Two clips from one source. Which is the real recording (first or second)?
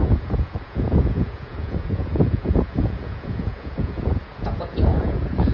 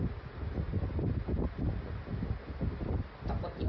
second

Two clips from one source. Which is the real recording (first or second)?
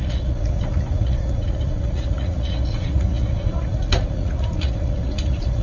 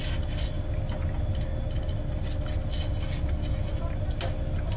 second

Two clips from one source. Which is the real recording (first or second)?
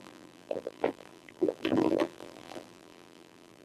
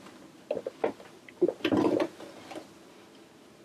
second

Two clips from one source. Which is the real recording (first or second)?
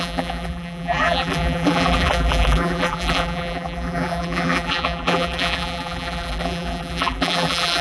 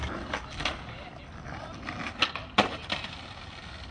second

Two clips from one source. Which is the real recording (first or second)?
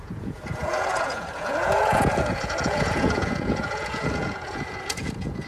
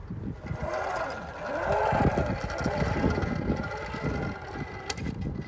second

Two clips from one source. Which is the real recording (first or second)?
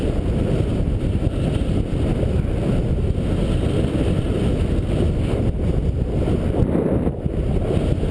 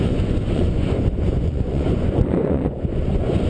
first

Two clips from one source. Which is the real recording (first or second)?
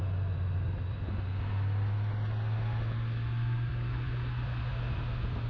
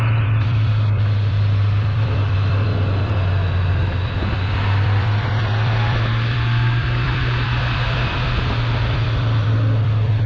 first